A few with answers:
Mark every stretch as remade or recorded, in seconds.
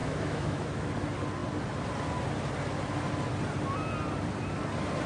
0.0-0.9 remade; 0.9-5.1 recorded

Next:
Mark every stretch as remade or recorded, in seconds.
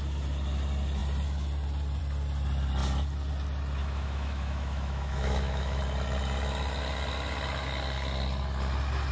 0.0-3.8 recorded; 3.8-5.8 remade; 5.8-9.1 recorded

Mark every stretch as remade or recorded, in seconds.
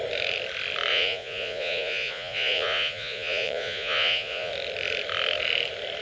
0.0-0.9 recorded; 0.9-4.5 remade; 4.5-6.0 recorded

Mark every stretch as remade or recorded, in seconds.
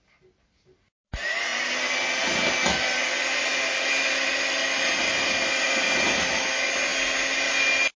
0.0-8.0 recorded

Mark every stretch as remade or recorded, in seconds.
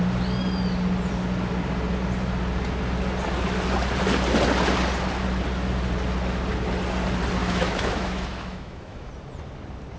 0.0-7.4 recorded; 7.4-9.1 remade; 9.1-10.0 recorded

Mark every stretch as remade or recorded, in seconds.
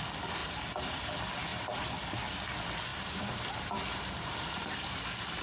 0.0-0.4 recorded; 0.4-1.1 remade; 1.1-1.5 recorded; 1.5-2.1 remade; 2.1-2.9 recorded; 2.9-5.0 remade; 5.0-5.4 recorded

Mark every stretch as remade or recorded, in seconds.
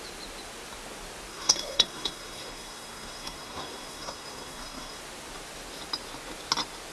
0.0-1.3 recorded; 1.3-5.0 remade; 5.0-6.9 recorded